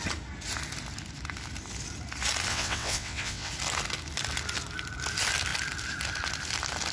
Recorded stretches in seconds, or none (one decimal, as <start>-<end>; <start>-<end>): 0.0-2.5; 3.5-6.9